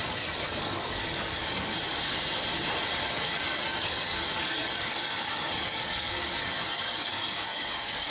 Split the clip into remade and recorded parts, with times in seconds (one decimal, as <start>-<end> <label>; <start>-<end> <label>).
0.0-1.7 remade; 1.7-3.1 recorded; 3.1-8.1 remade